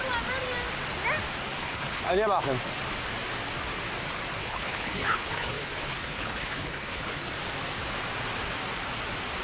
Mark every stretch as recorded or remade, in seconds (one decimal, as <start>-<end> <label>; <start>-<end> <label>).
0.0-1.6 recorded; 1.6-2.1 remade; 2.1-4.4 recorded; 4.4-7.3 remade; 7.3-9.4 recorded